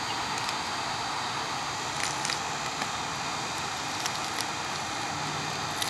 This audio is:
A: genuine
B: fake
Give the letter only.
A